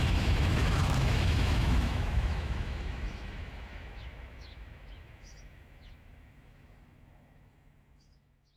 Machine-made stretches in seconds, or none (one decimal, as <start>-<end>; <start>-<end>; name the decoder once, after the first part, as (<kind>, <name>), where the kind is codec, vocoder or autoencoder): 0.0-8.6 (autoencoder, DAC-VAE)